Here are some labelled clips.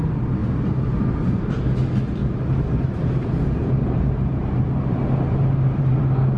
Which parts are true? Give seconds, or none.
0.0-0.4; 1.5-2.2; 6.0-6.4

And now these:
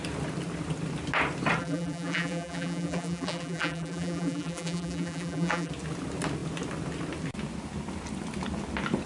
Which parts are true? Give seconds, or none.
0.0-1.6; 5.7-9.1

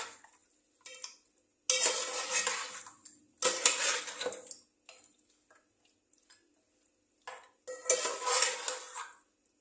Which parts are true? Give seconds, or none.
0.0-9.6